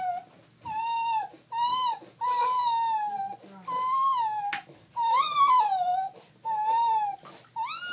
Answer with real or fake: real